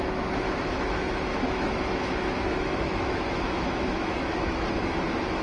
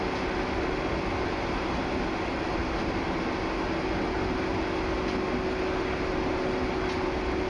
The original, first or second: second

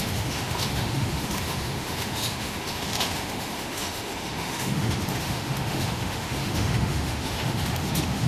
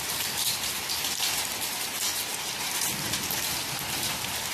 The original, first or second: second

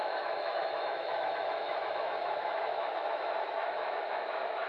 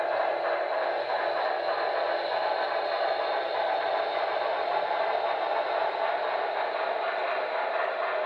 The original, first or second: second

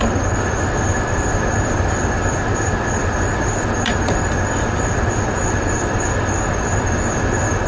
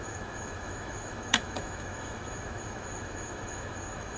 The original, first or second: first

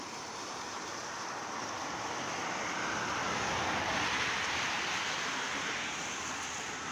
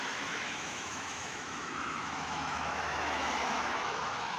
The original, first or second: first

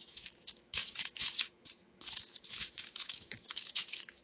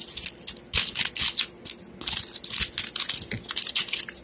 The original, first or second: second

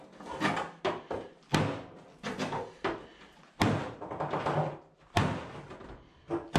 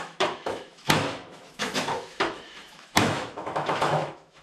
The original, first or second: first